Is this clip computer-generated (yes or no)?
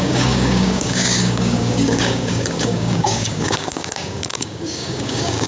yes